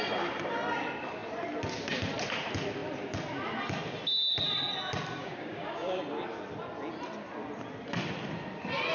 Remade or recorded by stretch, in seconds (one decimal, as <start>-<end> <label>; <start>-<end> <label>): 0.0-5.2 recorded; 5.2-6.0 remade; 6.0-8.9 recorded